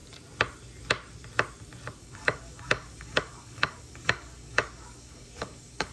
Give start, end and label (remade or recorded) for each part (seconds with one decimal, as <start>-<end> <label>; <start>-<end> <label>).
0.0-2.0 recorded; 2.0-5.9 remade